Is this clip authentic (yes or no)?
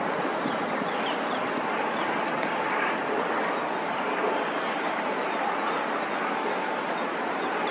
yes